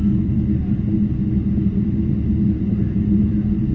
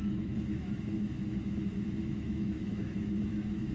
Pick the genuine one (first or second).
first